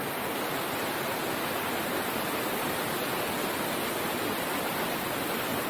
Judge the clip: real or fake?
real